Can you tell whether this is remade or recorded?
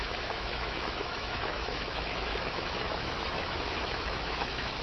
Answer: remade